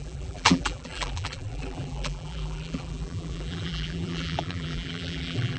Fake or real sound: fake